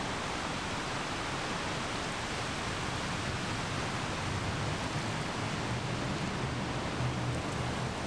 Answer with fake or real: real